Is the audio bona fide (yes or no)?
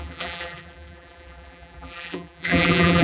no